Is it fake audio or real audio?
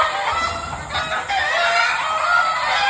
real